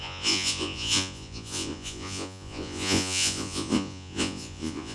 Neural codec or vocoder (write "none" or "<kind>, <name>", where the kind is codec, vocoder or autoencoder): vocoder, Vocos